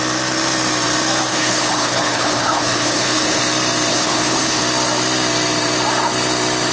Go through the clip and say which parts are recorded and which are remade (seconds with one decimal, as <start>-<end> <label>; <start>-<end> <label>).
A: 0.0-1.3 recorded; 1.3-3.4 remade; 3.4-3.9 recorded; 3.9-4.6 remade; 4.6-6.7 recorded